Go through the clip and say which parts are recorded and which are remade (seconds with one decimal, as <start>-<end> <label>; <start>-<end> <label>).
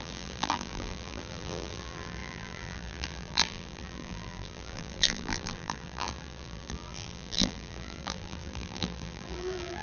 0.0-9.8 remade